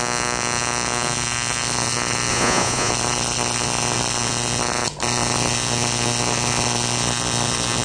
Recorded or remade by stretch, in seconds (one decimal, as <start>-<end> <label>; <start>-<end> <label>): 0.0-2.3 recorded; 2.3-2.9 remade; 2.9-7.8 recorded